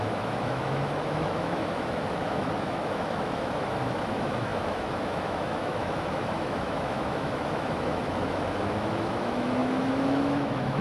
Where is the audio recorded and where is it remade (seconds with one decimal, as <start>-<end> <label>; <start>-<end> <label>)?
0.0-10.8 remade